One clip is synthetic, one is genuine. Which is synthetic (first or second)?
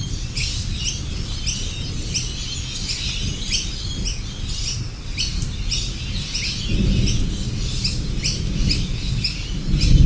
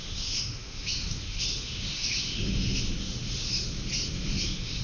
second